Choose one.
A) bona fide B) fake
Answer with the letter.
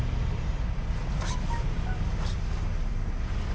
B